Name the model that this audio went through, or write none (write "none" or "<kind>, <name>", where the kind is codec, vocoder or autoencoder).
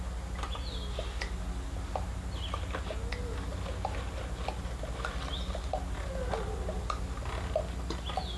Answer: none